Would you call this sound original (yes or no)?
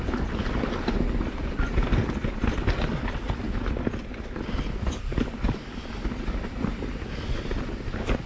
yes